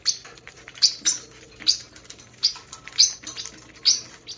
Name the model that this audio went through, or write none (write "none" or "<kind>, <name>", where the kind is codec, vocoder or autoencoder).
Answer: none